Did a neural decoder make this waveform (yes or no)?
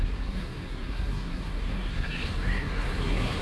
yes